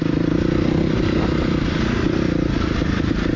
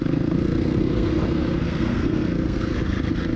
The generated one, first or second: second